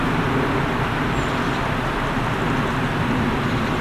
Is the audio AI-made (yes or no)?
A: no